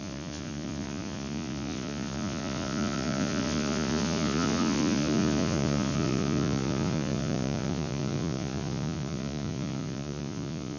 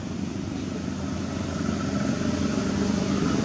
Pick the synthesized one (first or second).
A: first